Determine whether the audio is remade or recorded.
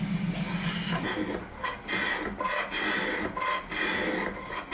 recorded